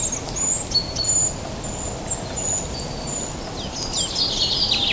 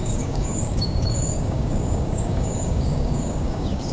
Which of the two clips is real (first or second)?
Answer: first